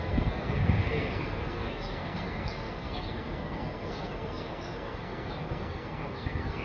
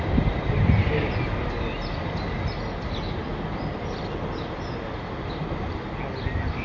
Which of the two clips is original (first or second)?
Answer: second